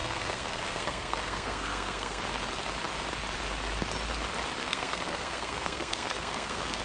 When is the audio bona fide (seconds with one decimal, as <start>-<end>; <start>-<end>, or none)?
2.2-4.6